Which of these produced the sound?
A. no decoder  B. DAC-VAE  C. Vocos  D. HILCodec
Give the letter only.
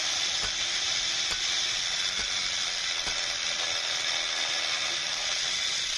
A